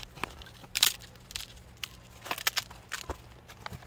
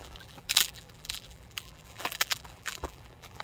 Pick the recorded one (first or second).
first